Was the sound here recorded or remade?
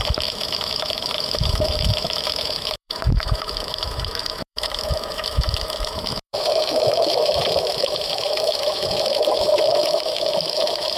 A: remade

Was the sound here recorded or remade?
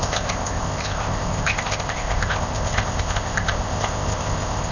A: remade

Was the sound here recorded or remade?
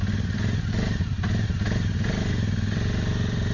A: recorded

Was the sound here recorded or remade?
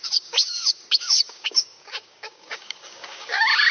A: remade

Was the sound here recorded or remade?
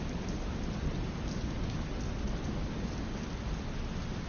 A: recorded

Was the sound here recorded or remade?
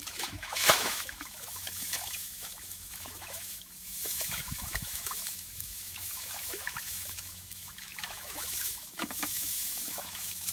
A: remade